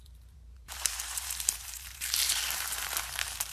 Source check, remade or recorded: remade